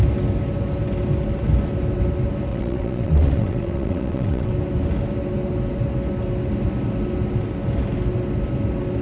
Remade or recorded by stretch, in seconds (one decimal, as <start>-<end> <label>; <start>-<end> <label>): 0.0-2.5 recorded; 2.5-4.5 remade; 4.5-9.0 recorded